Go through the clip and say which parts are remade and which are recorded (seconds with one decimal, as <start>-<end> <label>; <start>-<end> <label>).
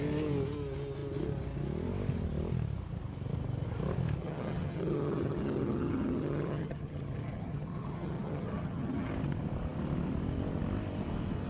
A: 0.0-4.2 recorded; 4.2-9.1 remade; 9.1-11.5 recorded